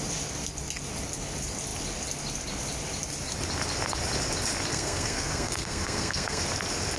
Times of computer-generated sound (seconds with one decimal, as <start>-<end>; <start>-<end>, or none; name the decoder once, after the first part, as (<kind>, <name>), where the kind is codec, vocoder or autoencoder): 4.7-6.4 (codec, SNAC)